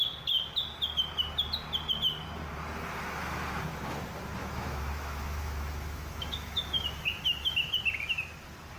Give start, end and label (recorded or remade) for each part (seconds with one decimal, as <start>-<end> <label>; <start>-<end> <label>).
0.0-4.4 recorded; 4.4-7.7 remade; 7.7-8.8 recorded